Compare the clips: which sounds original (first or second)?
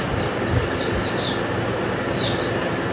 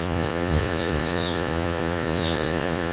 first